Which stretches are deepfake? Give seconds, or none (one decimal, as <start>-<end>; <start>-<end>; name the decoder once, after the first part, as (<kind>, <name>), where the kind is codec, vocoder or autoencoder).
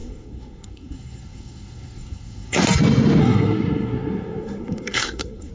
0.0-2.6 (codec, SNAC); 3.2-5.5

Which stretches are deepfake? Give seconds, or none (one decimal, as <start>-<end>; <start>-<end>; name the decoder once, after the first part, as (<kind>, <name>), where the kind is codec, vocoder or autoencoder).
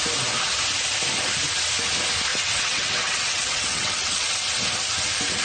2.3-4.4 (vocoder, WaveNeXt)